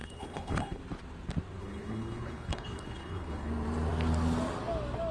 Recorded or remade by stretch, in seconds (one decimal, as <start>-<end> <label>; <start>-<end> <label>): 0.0-0.8 remade; 0.8-1.6 recorded; 1.6-3.5 remade; 3.5-5.1 recorded